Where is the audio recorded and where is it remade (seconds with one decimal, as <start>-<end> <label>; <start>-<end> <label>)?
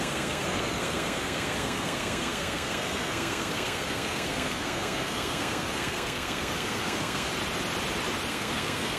0.0-7.3 remade; 7.3-8.3 recorded; 8.3-9.0 remade